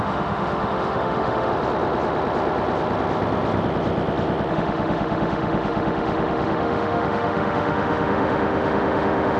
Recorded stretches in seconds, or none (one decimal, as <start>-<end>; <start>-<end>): 1.5-4.5